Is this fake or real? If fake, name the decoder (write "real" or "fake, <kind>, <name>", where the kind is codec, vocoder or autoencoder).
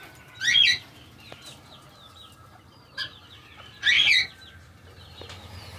real